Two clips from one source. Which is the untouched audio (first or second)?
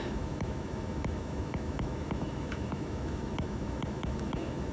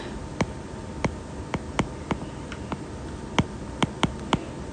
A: second